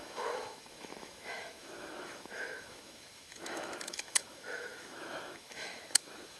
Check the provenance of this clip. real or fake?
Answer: fake